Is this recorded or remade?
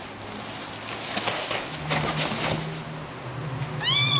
recorded